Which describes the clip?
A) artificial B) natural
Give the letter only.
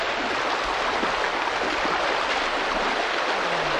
B